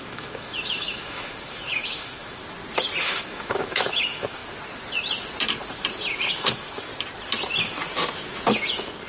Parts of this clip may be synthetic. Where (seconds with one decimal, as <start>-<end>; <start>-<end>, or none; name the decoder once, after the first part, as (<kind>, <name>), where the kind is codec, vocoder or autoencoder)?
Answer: 0.0-2.4 (autoencoder, DAC-VAE); 3.0-4.4; 6.4-6.9